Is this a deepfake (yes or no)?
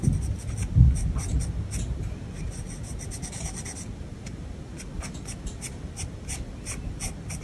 no